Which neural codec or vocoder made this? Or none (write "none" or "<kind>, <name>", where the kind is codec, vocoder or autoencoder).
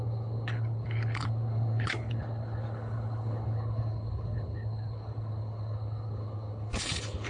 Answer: codec, HILCodec